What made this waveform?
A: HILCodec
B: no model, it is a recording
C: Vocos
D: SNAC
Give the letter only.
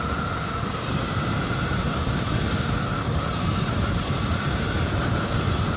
B